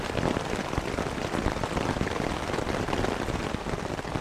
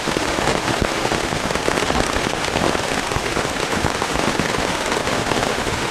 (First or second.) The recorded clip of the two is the first